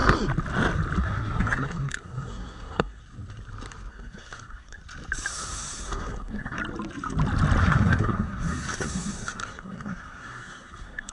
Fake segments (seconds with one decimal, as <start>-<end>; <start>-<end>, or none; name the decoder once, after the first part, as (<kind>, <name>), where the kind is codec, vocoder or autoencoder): 1.0-3.0 (codec, SNAC); 3.9-4.8; 5.3-6.6; 7.6-11.1